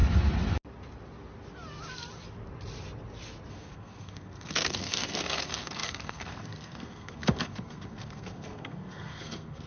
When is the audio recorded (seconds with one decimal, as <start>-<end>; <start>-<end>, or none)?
0.0-3.5